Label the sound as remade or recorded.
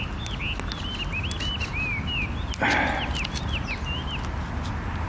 recorded